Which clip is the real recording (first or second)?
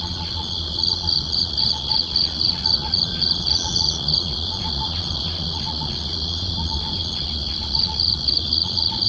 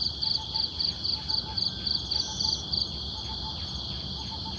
second